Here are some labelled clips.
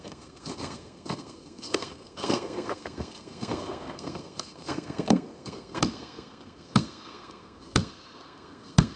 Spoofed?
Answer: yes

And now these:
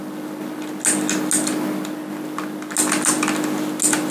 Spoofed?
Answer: no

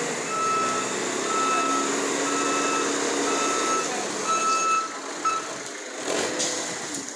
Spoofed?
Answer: no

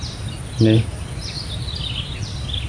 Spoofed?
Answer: no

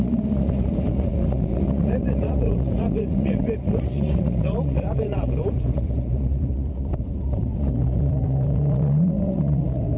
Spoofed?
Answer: yes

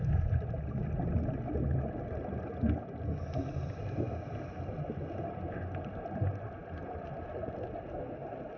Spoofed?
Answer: no